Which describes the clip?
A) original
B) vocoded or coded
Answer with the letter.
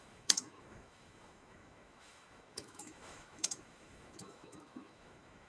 B